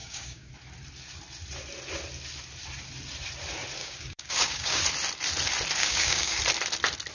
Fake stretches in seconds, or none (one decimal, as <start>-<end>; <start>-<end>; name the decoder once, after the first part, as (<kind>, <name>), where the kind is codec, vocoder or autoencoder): 0.0-0.5 (codec, DAC); 3.8-4.8; 5.8-6.4